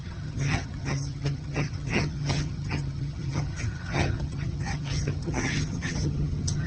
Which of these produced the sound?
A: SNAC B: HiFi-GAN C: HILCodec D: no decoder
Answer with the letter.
B